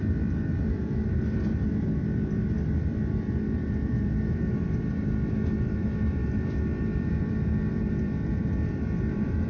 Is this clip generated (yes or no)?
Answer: yes